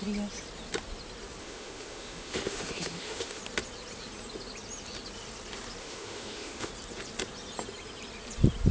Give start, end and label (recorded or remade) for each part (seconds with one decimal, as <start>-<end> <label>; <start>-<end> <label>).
0.0-1.4 recorded; 1.4-3.4 remade; 3.4-5.8 recorded; 5.8-6.7 remade; 6.7-8.7 recorded